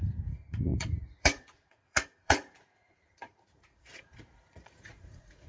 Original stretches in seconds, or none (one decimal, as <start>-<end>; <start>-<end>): none